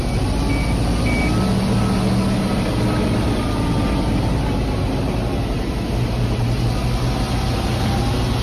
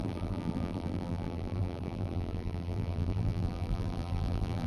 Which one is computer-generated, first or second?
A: second